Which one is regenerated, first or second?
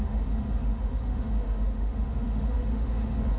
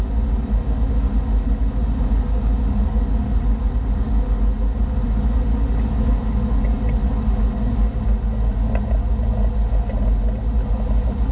first